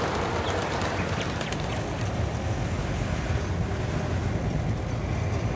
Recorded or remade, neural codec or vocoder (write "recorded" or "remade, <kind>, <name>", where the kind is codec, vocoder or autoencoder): recorded